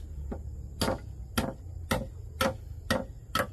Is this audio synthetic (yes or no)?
no